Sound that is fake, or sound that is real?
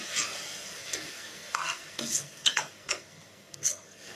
fake